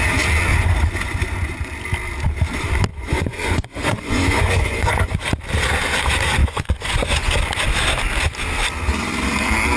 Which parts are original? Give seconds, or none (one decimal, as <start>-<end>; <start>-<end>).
0.0-0.5; 1.7-2.9; 5.2-6.4; 7.3-9.8